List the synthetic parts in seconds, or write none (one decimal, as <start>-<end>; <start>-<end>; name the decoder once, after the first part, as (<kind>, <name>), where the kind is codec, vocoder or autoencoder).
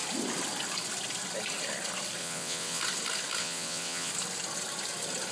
2.2-2.8 (vocoder, WaveNeXt); 3.4-4.1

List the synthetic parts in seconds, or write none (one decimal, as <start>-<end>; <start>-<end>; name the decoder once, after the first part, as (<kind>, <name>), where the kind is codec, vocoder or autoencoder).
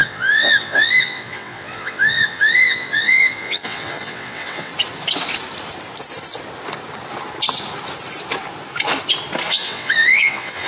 0.0-4.7 (vocoder, WaveNeXt); 9.5-10.7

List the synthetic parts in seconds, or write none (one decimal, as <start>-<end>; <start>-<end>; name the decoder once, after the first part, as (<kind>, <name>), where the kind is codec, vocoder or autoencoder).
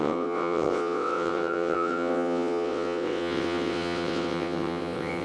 0.0-5.2 (vocoder, WaveNeXt)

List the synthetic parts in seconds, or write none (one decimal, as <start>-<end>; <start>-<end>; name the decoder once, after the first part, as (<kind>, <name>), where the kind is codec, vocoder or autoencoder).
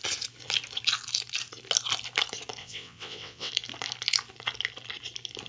2.6-3.5 (vocoder, WaveNeXt)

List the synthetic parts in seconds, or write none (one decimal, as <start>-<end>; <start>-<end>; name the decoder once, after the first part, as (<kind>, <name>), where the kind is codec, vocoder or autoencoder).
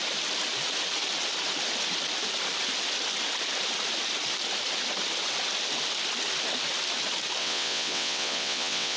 7.4-9.0 (vocoder, WaveNeXt)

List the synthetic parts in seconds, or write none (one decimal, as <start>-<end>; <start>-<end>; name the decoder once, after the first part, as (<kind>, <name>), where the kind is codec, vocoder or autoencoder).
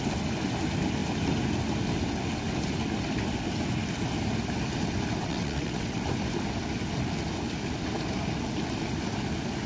5.2-6.0 (vocoder, WaveNeXt)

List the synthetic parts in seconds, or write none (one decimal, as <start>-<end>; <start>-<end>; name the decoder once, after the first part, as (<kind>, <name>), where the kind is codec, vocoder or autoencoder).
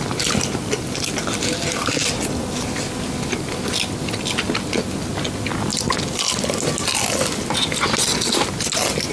none